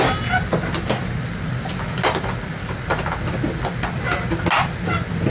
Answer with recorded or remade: recorded